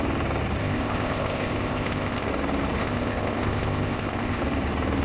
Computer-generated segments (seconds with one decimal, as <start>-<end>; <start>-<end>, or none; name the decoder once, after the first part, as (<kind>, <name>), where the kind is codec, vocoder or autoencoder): 0.6-2.3 (codec, ZipCodec); 2.8-4.4